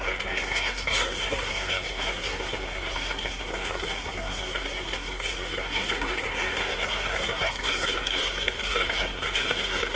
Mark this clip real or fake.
fake